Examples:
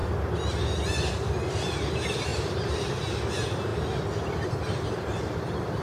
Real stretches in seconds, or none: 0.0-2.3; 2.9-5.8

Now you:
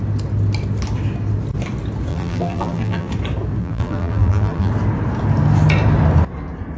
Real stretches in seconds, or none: 0.0-2.1; 3.1-3.6; 4.7-6.8

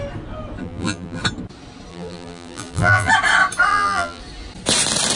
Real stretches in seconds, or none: 0.0-0.6; 1.2-1.9; 3.1-3.7; 4.2-5.2

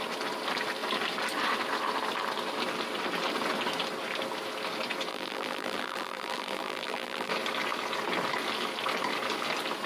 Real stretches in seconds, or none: 0.0-5.1; 7.3-9.9